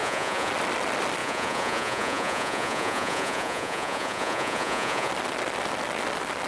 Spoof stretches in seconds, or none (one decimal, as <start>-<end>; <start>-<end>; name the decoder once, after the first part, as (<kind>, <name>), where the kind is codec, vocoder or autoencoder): 0.0-0.5 (vocoder, Vocos); 1.2-5.1